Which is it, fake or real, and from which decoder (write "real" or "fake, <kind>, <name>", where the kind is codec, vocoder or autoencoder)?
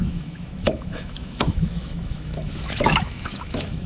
fake, autoencoder, DAC-VAE